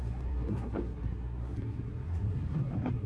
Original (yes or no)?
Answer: no